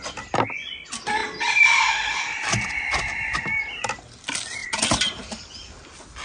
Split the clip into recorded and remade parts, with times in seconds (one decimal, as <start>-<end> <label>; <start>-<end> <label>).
0.0-4.6 recorded; 4.6-5.5 remade; 5.5-6.2 recorded